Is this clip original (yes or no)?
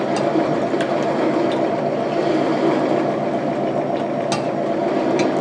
yes